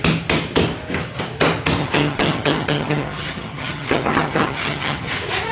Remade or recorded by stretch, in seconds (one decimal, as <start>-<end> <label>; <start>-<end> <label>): 0.0-1.8 recorded; 1.8-5.1 remade; 5.1-5.5 recorded